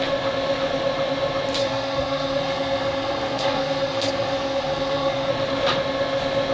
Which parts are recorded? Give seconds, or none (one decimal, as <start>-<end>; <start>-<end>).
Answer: 0.0-1.6; 5.3-6.5